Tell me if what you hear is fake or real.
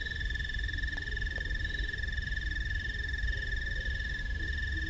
fake